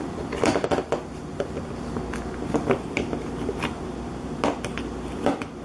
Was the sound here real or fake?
real